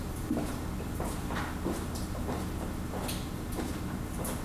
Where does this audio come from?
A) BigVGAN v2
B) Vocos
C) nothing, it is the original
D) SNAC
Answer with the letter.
C